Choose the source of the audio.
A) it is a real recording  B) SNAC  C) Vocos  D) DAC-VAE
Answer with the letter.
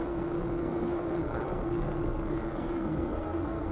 B